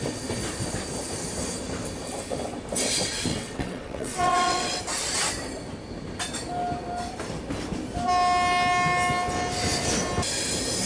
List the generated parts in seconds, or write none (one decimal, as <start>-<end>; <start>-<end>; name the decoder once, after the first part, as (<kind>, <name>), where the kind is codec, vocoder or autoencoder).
3.3-4.8 (vocoder, WaveNeXt)